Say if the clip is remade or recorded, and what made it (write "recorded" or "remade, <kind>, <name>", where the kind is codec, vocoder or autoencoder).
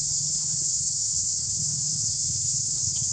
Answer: remade, codec, HILCodec